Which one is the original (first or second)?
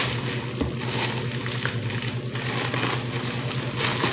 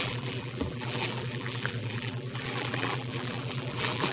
first